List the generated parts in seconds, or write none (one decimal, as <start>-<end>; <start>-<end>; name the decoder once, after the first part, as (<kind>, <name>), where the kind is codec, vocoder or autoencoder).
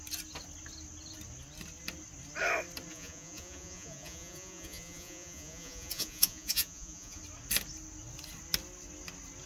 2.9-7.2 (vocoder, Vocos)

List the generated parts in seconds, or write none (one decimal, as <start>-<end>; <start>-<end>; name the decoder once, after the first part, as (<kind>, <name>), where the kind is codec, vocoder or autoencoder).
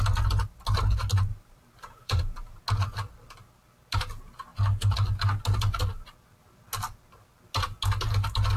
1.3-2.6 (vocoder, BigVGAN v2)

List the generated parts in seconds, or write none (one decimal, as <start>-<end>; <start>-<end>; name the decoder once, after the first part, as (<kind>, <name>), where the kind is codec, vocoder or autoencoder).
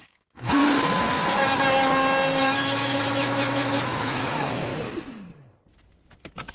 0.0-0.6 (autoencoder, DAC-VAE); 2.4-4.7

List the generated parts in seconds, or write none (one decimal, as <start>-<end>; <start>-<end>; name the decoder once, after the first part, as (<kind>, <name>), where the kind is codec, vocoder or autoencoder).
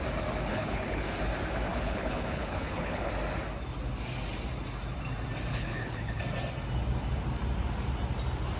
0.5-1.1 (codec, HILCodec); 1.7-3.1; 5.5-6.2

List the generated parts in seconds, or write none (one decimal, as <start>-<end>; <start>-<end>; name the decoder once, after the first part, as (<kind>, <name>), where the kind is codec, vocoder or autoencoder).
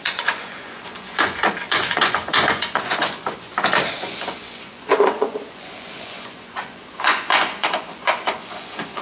0.0-3.5 (vocoder, Vocos); 4.0-9.0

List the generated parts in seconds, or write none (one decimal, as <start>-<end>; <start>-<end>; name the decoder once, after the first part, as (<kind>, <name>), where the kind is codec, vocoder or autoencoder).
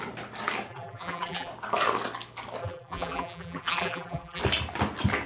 0.7-1.5 (vocoder, BigVGAN v2); 2.6-4.4